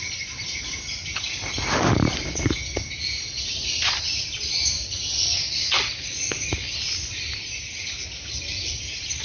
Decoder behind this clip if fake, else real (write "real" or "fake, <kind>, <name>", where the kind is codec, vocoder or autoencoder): real